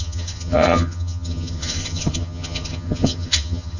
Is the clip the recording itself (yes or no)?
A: no